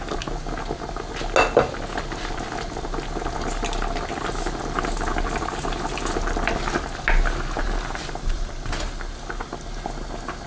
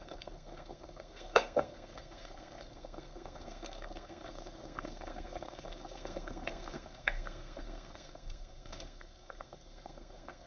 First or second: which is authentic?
first